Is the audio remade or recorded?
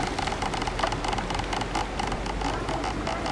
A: recorded